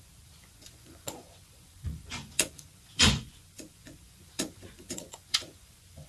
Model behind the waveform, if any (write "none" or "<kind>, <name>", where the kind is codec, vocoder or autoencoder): vocoder, Vocos